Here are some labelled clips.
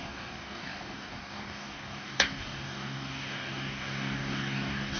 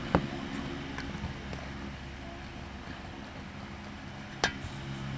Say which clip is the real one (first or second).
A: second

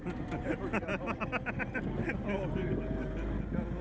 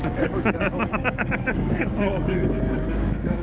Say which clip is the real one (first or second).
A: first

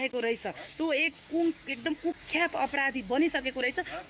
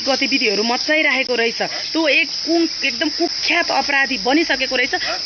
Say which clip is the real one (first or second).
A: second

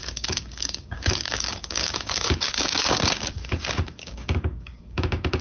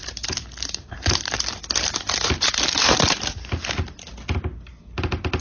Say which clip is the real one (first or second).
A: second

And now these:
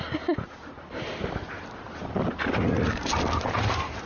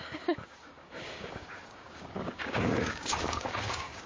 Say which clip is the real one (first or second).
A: first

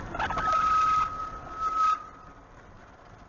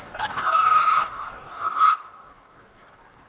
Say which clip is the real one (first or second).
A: first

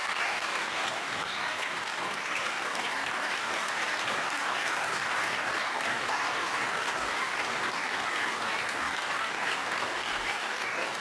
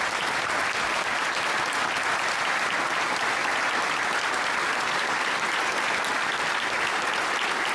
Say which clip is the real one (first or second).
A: second